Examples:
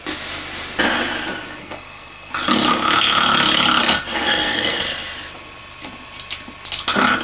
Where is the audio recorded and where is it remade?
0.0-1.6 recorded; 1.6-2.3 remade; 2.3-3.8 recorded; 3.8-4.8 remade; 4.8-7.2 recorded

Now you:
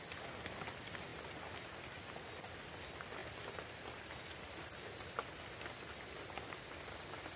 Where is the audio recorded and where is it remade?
0.0-7.4 recorded